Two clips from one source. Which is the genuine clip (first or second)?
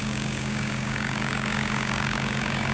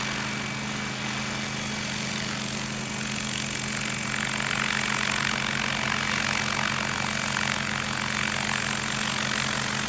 second